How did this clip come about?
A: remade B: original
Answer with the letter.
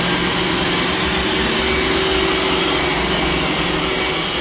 B